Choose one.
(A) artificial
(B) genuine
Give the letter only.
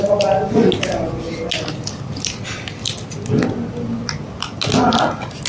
B